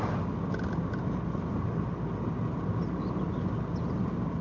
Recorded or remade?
recorded